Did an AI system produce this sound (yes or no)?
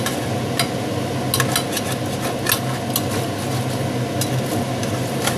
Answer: no